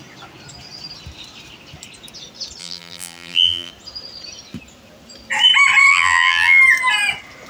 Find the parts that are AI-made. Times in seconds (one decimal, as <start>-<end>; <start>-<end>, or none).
2.6-3.7; 5.9-6.6